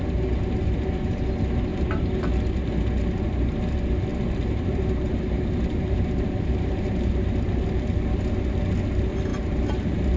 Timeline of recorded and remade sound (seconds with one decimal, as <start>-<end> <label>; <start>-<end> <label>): 0.0-1.7 recorded; 1.7-2.3 remade; 2.3-4.1 recorded; 4.1-7.1 remade; 7.1-9.3 recorded; 9.3-10.2 remade